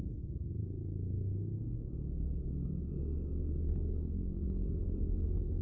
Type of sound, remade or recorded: remade